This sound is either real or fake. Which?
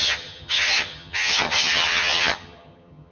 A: fake